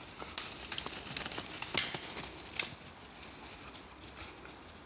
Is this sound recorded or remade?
recorded